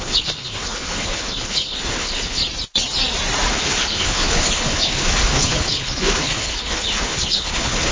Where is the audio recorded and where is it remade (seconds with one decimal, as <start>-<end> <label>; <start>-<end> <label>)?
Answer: 0.0-2.4 remade; 2.4-3.5 recorded; 3.5-7.9 remade